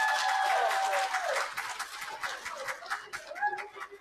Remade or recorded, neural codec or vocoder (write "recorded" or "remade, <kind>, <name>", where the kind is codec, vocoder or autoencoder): recorded